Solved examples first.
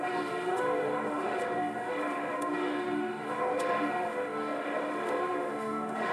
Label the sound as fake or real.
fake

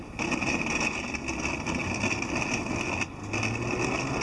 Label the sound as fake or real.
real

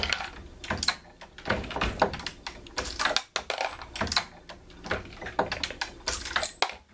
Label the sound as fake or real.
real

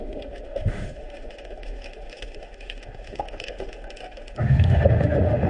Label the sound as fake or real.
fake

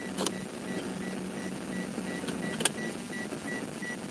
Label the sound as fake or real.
real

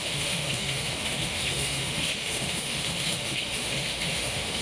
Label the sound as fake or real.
fake